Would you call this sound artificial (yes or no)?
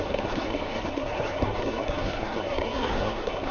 yes